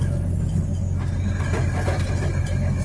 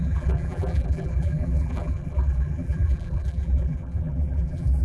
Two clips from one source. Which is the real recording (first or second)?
first